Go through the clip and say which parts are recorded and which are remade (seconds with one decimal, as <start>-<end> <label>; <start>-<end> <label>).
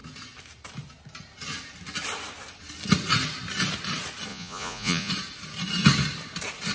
0.0-4.3 recorded; 4.3-5.1 remade; 5.1-6.7 recorded